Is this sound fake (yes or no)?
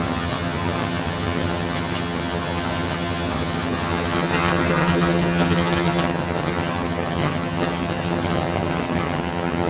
yes